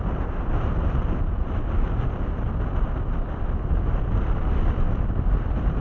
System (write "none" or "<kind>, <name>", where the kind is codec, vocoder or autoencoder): none